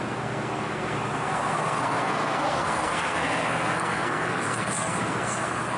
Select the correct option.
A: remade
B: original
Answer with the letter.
A